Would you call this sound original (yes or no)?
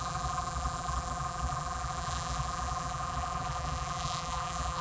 no